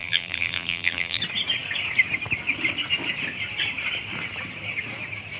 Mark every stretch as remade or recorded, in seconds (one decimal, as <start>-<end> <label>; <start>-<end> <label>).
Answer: 0.0-1.2 remade; 1.2-5.4 recorded